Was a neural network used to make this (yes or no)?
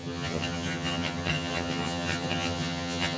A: yes